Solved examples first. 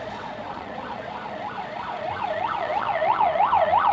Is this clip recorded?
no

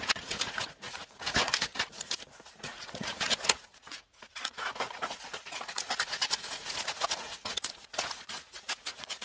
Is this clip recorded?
no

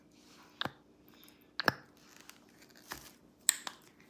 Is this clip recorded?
yes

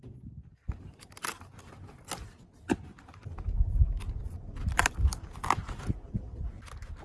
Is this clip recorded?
yes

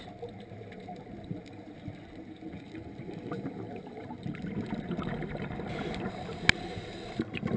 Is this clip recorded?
yes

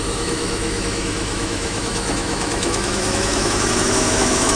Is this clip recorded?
no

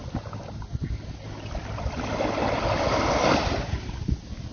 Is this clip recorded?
yes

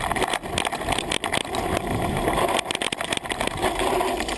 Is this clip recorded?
yes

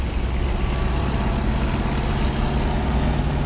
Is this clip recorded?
yes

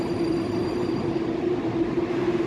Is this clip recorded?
yes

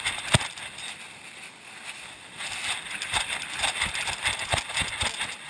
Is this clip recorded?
yes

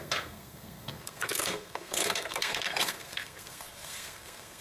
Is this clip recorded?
no